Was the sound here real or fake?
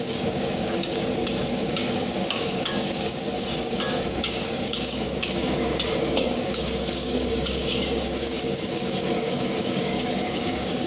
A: fake